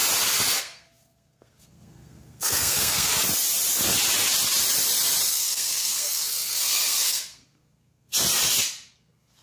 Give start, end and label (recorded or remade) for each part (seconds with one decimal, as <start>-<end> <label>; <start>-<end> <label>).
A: 0.0-0.6 recorded; 0.6-3.1 remade; 3.1-5.3 recorded; 5.3-8.1 remade; 8.1-8.9 recorded; 8.9-9.4 remade